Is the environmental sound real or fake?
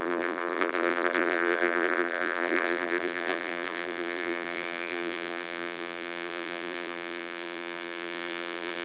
fake